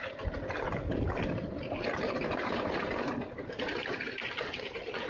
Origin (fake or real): fake